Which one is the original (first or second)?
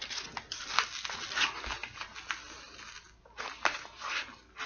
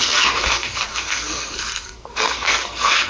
first